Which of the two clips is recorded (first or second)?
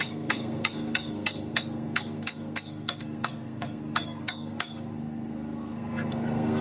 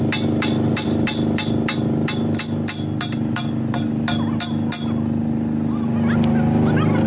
second